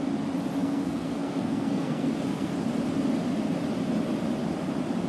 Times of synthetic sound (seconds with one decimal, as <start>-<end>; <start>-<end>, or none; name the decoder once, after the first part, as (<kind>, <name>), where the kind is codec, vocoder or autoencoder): 0.6-2.5 (codec, SNAC)